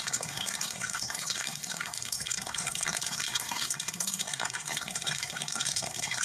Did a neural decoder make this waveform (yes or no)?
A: yes